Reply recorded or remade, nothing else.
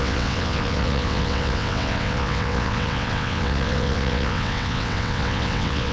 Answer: remade